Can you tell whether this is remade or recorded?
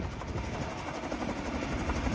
recorded